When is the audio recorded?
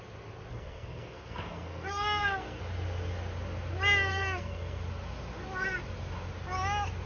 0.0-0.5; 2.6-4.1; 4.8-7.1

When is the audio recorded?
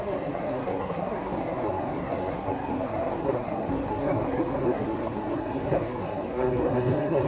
none